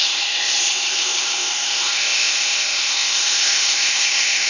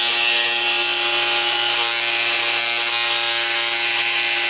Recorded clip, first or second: second